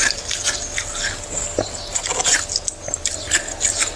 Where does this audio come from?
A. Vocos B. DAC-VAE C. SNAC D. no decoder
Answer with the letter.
D